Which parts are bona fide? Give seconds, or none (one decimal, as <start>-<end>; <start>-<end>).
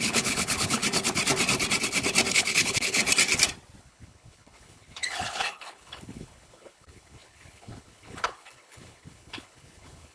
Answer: 0.8-2.3; 3.0-3.8